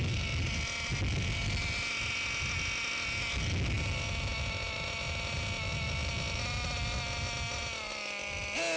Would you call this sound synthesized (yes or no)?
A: no